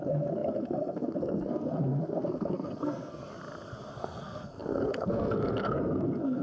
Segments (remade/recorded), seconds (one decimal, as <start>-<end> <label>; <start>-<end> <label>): 0.0-3.2 remade; 3.2-3.9 recorded; 3.9-6.4 remade